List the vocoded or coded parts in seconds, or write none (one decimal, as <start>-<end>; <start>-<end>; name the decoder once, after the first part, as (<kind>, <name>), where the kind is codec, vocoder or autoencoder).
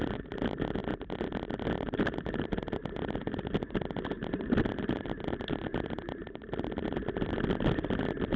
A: none